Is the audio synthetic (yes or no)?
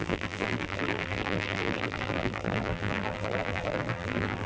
yes